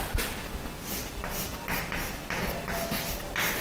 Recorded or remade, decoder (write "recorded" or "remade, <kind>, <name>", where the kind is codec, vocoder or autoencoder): recorded